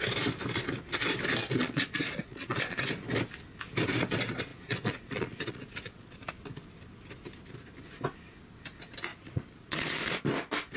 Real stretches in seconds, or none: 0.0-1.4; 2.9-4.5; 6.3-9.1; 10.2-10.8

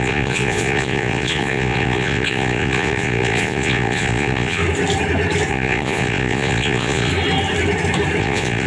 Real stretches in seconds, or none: 4.6-5.5; 7.1-8.2

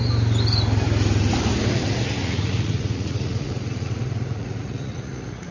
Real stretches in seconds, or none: 0.0-2.2

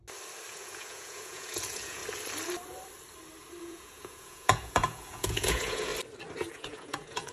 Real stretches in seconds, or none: 0.0-0.5; 2.0-3.6; 5.9-6.5

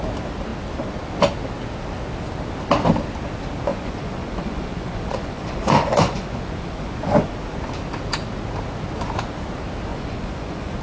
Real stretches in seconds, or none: 0.0-3.7; 7.3-9.9

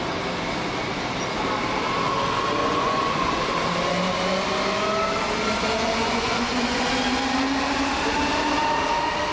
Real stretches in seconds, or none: 0.0-2.6; 3.4-6.0; 6.9-9.3

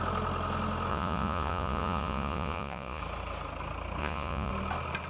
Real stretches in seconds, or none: 0.0-0.9; 3.0-4.0; 4.5-5.1

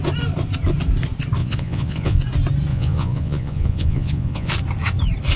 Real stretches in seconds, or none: 0.0-1.4; 2.2-2.7; 4.5-5.4